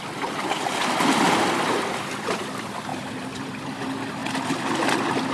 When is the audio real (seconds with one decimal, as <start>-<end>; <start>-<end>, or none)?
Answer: 4.2-5.3